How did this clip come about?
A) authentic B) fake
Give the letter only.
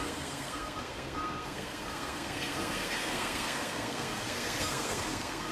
B